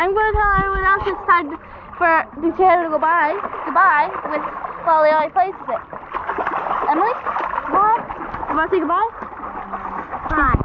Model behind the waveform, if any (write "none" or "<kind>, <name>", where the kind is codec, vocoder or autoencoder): none